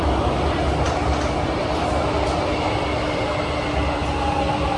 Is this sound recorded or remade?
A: recorded